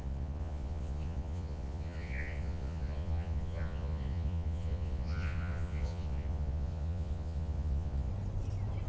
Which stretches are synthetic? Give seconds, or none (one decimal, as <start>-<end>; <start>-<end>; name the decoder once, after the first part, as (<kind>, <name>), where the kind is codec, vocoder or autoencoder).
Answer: 0.0-8.1 (vocoder, Vocos)